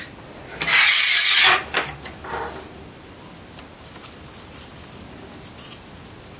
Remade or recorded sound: recorded